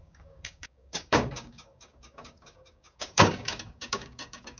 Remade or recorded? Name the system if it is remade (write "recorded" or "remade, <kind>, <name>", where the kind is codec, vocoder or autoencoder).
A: remade, codec, DAC